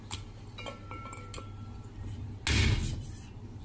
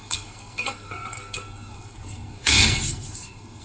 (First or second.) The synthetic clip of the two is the second